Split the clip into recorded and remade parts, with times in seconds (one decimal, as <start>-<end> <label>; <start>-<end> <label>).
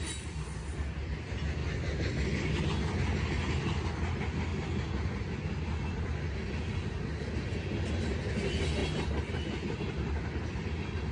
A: 0.0-11.1 recorded